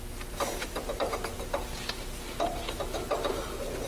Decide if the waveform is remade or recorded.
recorded